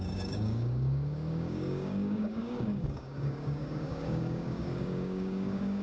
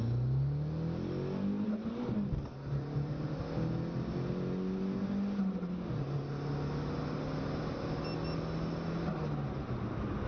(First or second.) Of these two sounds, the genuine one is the second